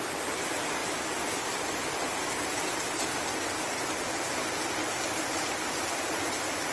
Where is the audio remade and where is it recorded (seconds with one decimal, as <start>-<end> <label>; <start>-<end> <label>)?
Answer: 0.0-0.8 recorded; 0.8-1.5 remade; 1.5-4.8 recorded; 4.8-5.5 remade; 5.5-6.7 recorded